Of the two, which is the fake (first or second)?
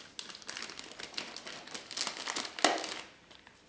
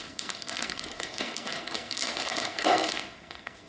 second